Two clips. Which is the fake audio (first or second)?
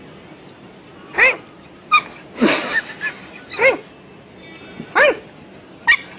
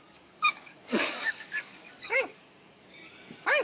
second